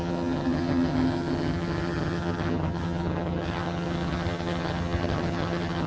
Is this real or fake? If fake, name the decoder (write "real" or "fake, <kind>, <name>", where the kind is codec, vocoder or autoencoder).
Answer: fake, vocoder, HiFi-GAN